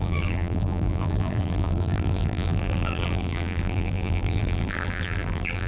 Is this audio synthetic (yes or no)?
yes